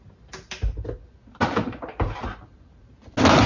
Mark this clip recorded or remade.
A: recorded